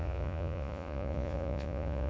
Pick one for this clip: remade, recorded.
remade